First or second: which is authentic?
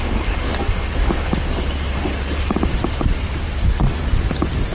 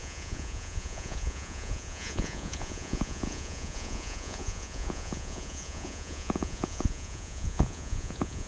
first